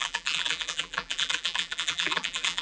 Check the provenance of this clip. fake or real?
fake